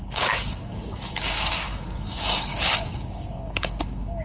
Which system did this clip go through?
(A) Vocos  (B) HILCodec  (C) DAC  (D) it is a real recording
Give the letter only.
C